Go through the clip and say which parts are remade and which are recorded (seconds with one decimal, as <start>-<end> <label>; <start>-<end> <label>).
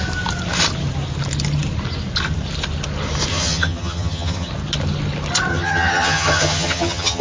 0.0-3.3 recorded; 3.3-4.5 remade; 4.5-5.5 recorded; 5.5-7.2 remade